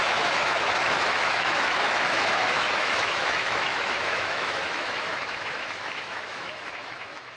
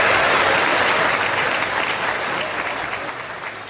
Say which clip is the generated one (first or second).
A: first